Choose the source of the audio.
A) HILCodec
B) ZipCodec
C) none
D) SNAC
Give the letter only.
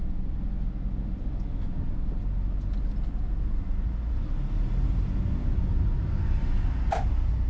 C